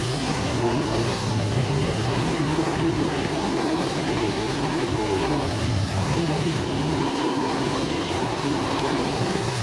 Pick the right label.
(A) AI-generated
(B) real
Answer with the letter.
A